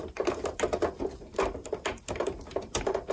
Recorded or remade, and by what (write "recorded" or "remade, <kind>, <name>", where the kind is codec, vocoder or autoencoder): recorded